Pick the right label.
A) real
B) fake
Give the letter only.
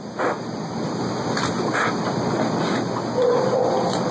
A